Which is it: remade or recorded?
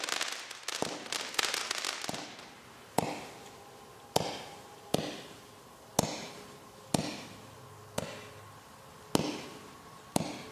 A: recorded